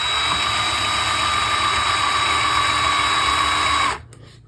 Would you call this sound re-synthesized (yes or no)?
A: no